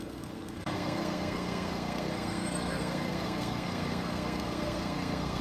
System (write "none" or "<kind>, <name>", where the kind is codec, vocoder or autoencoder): codec, SNAC